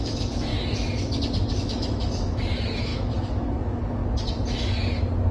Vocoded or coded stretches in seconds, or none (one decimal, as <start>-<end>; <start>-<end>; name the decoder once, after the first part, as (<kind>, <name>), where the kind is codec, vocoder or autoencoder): 0.0-0.5 (autoencoder, DAC-VAE); 1.6-4.0